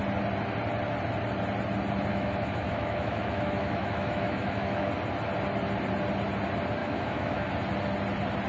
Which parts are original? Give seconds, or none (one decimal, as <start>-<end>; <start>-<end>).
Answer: 0.0-2.1; 4.9-6.8; 7.5-8.5